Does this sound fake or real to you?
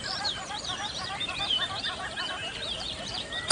fake